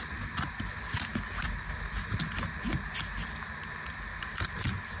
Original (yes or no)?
yes